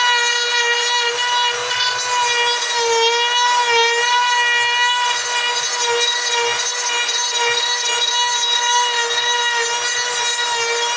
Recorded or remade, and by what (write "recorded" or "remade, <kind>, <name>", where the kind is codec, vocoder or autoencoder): recorded